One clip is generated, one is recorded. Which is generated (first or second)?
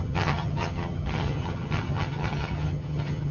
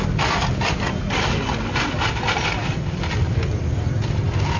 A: first